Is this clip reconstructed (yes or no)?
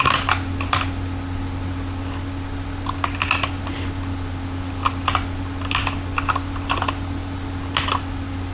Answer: no